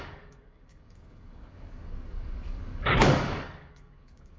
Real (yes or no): no